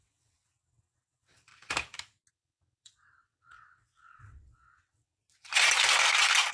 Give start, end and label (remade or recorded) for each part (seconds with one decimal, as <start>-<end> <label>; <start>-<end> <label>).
0.0-1.5 remade; 1.5-2.3 recorded; 2.3-5.2 remade; 5.2-6.5 recorded